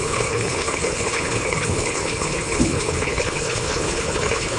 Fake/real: fake